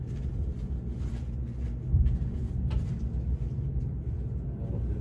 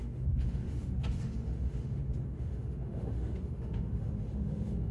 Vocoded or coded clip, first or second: second